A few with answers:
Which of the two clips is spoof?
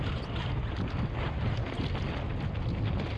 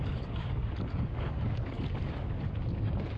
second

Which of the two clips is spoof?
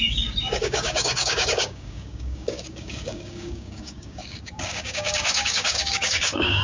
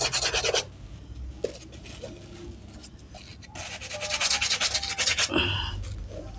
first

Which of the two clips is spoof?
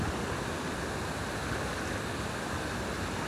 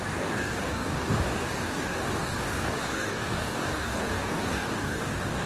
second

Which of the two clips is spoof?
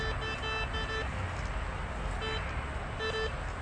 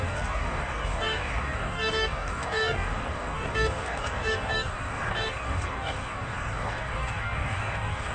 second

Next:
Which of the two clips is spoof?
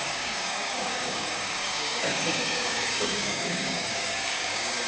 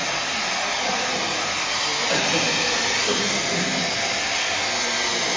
first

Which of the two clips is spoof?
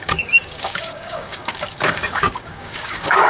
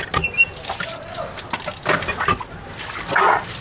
first